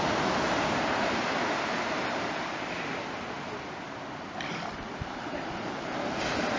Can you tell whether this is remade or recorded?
recorded